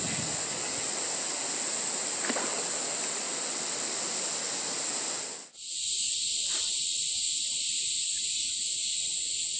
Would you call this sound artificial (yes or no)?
no